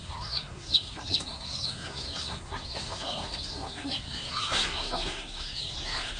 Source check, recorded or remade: remade